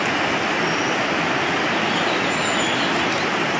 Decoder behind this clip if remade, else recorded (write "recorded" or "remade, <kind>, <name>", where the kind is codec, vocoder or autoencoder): recorded